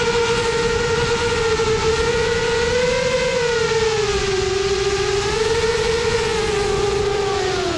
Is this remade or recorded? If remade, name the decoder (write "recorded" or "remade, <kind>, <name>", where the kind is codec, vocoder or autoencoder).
remade, vocoder, Vocos